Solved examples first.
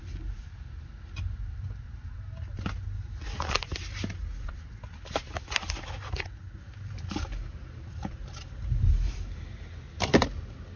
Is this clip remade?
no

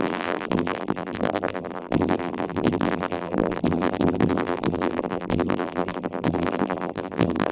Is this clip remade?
yes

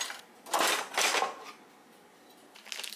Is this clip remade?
no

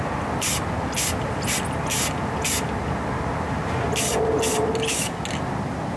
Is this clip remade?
no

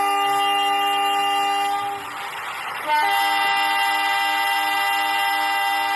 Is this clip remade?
no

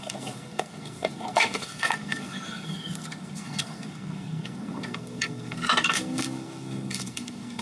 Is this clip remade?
yes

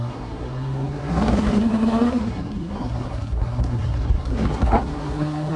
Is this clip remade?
yes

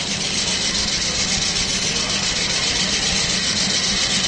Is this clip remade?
no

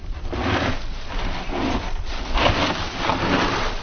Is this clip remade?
no